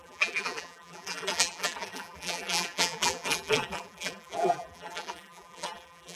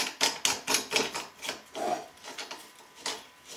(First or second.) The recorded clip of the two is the second